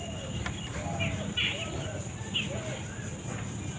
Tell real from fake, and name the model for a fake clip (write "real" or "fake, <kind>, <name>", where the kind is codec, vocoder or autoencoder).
real